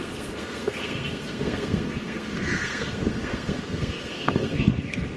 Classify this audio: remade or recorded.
remade